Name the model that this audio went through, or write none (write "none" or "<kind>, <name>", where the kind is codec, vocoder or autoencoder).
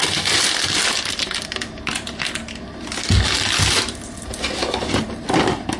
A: none